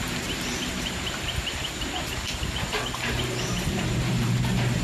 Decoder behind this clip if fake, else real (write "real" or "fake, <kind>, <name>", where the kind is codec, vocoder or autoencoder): fake, vocoder, BigVGAN v2